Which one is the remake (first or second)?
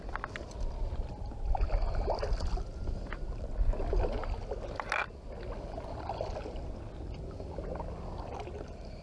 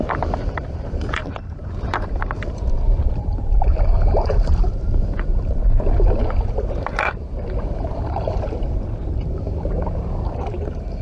second